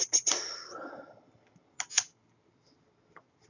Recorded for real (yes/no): yes